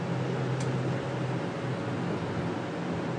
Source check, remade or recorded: recorded